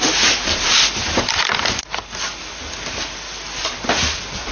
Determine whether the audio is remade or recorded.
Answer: recorded